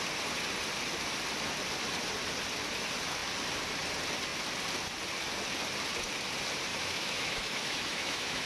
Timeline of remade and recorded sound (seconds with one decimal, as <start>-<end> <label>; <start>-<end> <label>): 0.0-6.7 recorded; 6.7-8.5 remade